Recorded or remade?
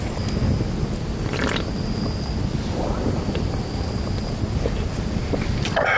recorded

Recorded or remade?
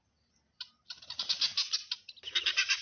recorded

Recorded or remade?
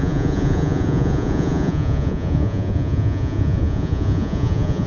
remade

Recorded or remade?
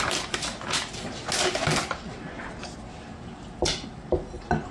recorded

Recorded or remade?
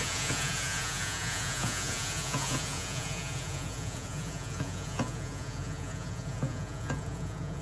remade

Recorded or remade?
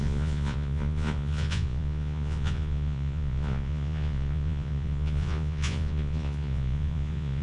remade